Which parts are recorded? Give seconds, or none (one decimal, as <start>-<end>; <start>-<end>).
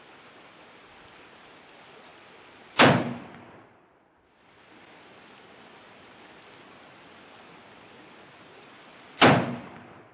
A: 0.0-10.1